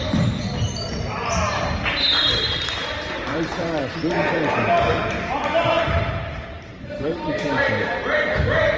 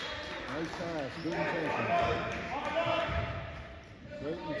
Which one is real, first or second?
second